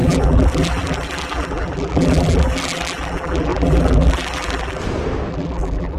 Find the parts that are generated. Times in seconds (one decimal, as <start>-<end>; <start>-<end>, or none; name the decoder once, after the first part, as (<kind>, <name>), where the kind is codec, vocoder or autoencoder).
0.0-4.8 (vocoder, BigVGAN v2); 5.3-6.0

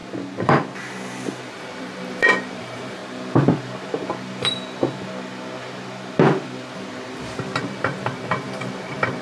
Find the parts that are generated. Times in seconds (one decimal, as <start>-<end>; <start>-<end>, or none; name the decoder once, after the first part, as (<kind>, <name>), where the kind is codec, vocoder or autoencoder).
1.5-3.0 (vocoder, BigVGAN v2); 7.6-9.2

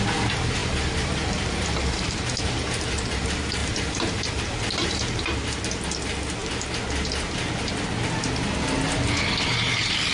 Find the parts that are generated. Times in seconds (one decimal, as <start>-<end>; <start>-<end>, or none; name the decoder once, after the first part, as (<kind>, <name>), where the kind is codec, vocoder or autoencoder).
0.6-3.2 (vocoder, BigVGAN v2); 3.6-5.6

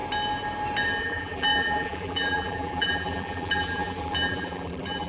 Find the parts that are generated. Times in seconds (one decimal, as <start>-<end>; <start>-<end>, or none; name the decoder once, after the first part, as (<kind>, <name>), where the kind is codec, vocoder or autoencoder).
1.0-5.1 (vocoder, BigVGAN v2)

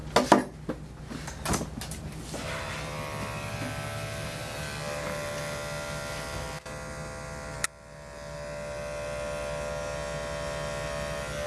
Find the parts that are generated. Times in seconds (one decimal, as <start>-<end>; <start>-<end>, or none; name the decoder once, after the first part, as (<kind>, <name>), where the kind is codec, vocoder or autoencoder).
none

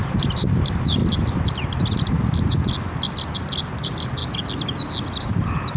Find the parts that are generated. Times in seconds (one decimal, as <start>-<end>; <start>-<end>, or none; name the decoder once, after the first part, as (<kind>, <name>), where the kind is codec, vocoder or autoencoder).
0.0-1.0 (vocoder, BigVGAN v2); 3.7-4.2; 5.2-5.8

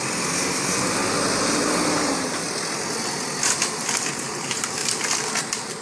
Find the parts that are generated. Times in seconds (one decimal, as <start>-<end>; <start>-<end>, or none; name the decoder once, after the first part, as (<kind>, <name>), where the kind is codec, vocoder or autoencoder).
0.0-1.0 (vocoder, BigVGAN v2); 2.0-2.4; 4.1-4.8

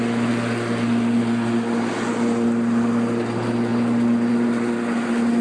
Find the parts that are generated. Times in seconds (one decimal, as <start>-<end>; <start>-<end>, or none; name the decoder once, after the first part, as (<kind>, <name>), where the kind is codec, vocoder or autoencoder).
none